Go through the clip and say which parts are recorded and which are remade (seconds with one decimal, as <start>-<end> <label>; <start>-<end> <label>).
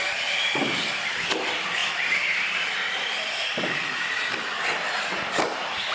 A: 0.0-5.9 recorded